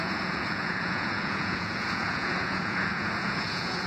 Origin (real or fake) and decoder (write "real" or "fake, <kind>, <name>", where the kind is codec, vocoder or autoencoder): fake, vocoder, Vocos